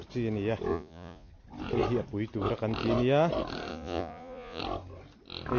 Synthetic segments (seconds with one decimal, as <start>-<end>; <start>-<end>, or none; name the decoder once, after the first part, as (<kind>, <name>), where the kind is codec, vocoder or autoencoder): 0.7-1.3 (vocoder, Vocos); 3.7-4.6